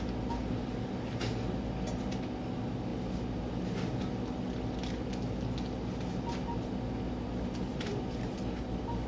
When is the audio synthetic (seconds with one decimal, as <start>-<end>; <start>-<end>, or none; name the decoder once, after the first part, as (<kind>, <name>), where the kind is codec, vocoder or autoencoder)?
7.7-8.2 (vocoder, BigVGAN v2)